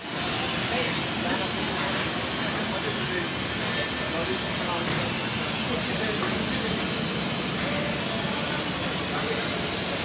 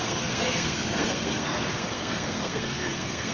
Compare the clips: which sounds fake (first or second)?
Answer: second